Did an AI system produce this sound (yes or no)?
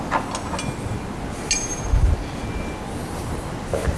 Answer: no